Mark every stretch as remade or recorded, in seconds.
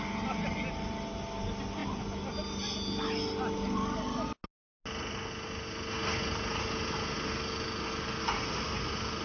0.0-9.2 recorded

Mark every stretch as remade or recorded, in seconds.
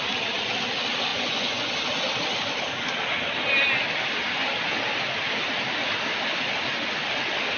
0.0-1.1 recorded; 1.1-1.7 remade; 1.7-7.6 recorded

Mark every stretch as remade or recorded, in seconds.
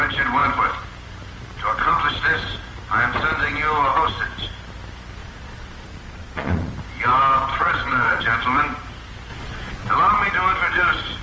0.0-5.2 recorded; 5.2-6.7 remade; 6.7-7.5 recorded; 7.5-8.2 remade; 8.2-9.3 recorded; 9.3-9.9 remade; 9.9-11.2 recorded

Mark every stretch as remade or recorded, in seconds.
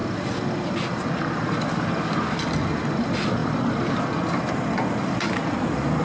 0.0-6.0 recorded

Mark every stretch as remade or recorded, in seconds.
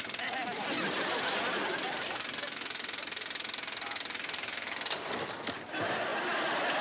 0.0-6.8 recorded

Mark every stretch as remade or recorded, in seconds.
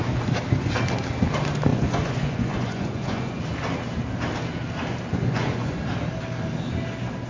0.0-1.7 recorded; 1.7-3.4 remade; 3.4-5.1 recorded; 5.1-5.8 remade; 5.8-7.3 recorded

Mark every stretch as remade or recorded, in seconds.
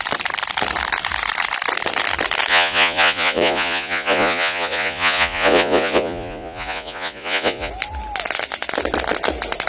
0.0-2.5 recorded; 2.5-7.7 remade; 7.7-9.7 recorded